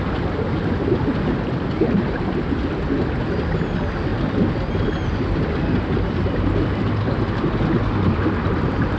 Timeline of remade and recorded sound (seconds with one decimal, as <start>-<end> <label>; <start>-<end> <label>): 0.0-9.0 recorded